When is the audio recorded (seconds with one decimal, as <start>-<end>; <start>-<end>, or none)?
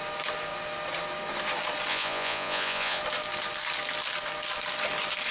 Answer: 0.0-1.9; 3.0-5.3